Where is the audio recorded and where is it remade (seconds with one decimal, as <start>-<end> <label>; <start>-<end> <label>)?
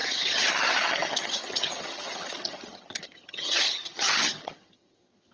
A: 0.0-5.3 remade